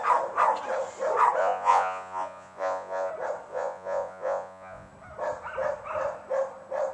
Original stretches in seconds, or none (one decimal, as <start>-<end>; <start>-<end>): 0.0-1.4; 3.1-3.5; 4.9-6.9